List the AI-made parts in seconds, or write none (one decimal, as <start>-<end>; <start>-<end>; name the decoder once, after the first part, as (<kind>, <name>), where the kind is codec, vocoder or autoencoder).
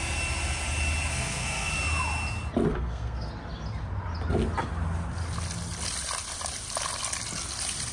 1.1-1.7 (codec, SNAC); 2.7-3.3